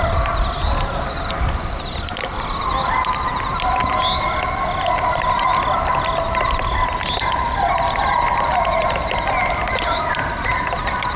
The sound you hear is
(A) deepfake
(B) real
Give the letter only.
B